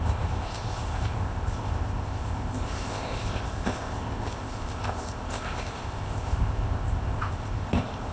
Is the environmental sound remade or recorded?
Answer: remade